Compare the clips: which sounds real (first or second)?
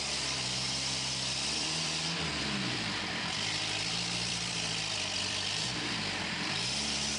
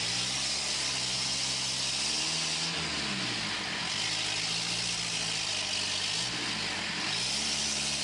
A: second